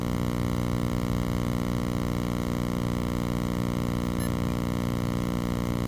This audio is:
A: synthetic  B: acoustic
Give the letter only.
B